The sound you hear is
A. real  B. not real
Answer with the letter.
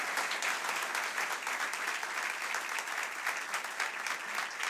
A